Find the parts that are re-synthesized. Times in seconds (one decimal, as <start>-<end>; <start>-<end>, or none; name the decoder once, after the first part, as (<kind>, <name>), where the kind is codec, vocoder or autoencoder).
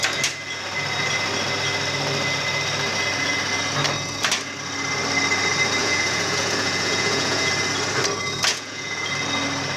5.8-7.5 (vocoder, Vocos); 8.5-9.1